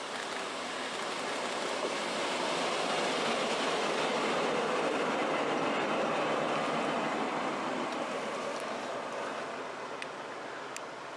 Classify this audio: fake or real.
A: real